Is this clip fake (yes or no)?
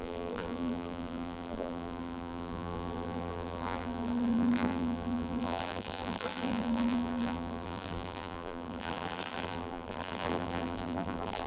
yes